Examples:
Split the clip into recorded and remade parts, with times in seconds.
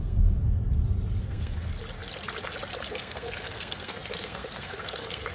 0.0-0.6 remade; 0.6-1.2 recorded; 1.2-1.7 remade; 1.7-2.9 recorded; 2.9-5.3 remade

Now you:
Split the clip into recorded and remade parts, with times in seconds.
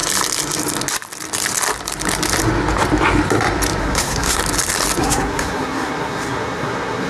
0.0-3.8 recorded; 3.8-4.4 remade; 4.4-5.0 recorded; 5.0-7.1 remade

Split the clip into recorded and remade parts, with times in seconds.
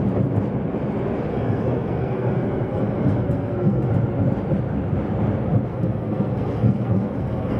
0.0-1.3 recorded; 1.3-3.9 remade; 3.9-5.7 recorded; 5.7-7.6 remade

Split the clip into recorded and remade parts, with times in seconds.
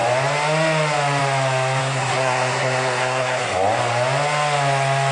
0.0-1.8 recorded; 1.8-3.4 remade; 3.4-5.1 recorded